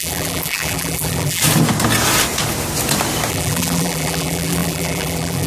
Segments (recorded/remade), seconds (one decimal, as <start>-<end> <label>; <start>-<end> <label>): 0.0-1.4 remade; 1.4-3.3 recorded; 3.3-5.5 remade